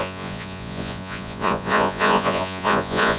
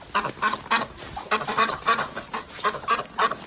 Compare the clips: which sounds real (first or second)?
second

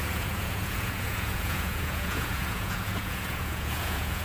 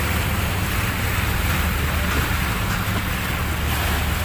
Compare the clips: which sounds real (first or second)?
second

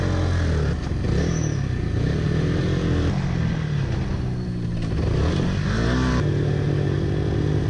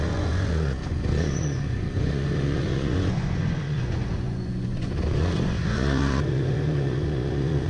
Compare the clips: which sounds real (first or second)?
first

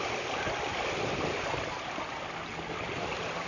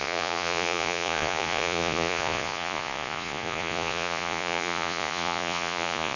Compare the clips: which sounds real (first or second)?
first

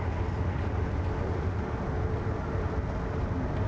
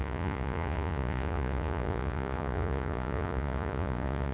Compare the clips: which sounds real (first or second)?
first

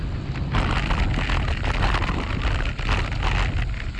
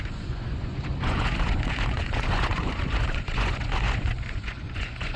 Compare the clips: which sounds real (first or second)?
first